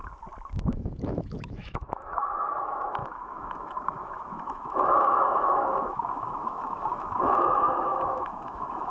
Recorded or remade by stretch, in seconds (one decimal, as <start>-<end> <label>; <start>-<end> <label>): 0.0-0.6 recorded; 0.6-8.9 remade